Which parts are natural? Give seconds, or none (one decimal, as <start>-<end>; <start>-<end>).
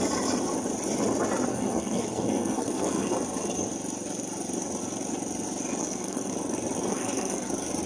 0.0-1.5; 3.1-5.8; 6.3-6.9; 7.5-7.9